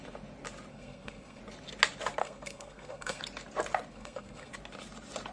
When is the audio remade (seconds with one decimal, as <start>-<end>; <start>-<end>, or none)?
0.7-1.4; 2.2-3.2; 3.9-4.5

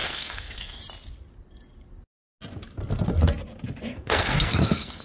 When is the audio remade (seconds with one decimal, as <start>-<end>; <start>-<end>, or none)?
0.0-0.8; 3.9-5.0

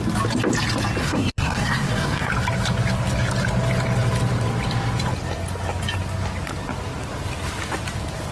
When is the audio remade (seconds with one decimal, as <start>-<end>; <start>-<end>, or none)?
1.0-2.3

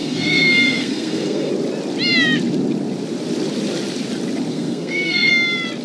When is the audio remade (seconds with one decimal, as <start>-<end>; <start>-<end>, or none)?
0.0-1.5; 4.5-5.3

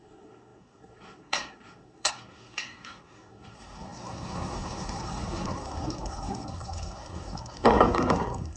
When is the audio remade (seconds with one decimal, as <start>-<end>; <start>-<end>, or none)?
0.0-8.6